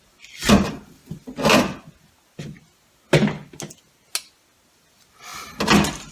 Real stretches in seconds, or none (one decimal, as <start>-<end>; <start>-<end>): 1.0-4.7; 5.3-6.1